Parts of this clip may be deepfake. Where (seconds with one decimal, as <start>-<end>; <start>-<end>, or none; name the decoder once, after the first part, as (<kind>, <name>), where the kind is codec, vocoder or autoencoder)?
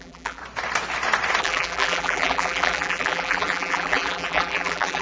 0.0-0.4 (vocoder, BigVGAN v2); 1.4-5.0